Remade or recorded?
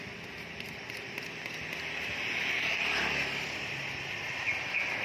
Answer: recorded